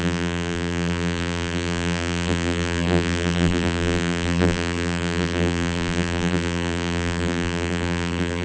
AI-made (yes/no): yes